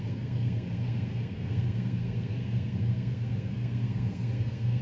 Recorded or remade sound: remade